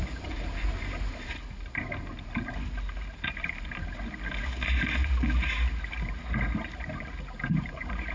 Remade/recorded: recorded